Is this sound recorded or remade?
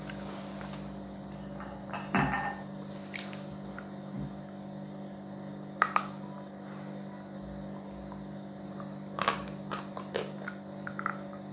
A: recorded